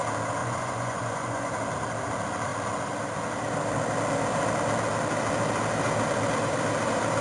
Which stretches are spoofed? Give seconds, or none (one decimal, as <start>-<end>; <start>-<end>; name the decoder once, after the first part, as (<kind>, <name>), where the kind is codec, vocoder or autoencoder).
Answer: 0.4-1.5 (vocoder, Vocos)